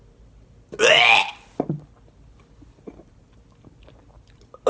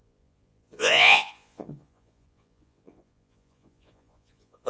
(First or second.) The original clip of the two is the first